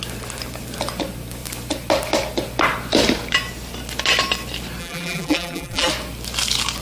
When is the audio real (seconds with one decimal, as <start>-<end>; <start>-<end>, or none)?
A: 0.0-4.8; 5.9-6.8